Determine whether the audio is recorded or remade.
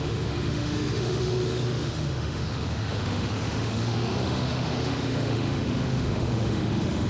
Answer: remade